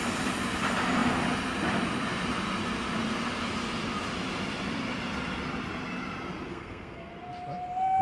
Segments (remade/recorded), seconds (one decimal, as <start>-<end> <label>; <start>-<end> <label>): 0.0-6.5 recorded; 6.5-7.1 remade; 7.1-8.0 recorded